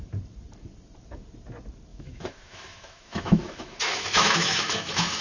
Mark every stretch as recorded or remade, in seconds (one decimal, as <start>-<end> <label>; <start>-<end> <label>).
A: 0.0-1.9 recorded; 1.9-5.2 remade